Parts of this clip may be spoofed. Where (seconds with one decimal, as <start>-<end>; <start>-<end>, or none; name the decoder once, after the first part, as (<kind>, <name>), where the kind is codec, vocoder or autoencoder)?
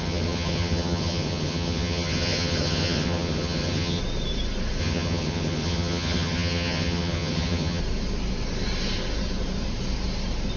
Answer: 0.0-4.0 (vocoder, HiFi-GAN); 4.8-7.8